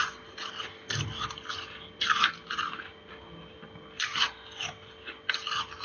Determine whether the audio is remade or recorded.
recorded